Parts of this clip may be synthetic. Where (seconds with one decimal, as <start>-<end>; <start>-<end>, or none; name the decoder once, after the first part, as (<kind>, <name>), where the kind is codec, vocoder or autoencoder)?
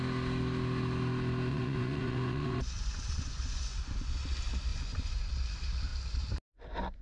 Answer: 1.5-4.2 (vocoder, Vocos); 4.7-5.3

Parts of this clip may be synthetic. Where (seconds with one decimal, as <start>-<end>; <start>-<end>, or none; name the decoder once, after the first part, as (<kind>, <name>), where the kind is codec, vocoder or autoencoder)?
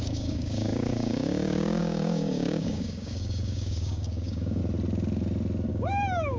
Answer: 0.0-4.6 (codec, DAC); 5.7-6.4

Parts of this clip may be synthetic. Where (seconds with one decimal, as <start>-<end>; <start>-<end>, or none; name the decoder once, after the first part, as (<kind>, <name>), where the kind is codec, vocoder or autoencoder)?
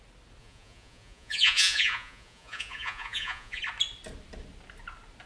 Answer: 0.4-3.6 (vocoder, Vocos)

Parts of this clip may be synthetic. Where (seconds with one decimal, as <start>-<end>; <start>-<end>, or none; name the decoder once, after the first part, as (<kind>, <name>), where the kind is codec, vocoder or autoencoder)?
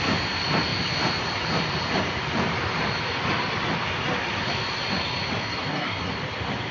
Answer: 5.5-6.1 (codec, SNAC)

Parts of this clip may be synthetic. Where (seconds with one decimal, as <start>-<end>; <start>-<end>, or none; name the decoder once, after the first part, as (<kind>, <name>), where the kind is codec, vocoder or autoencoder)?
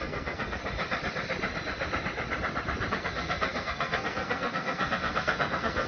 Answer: 0.0-0.6 (codec, SNAC); 2.9-5.9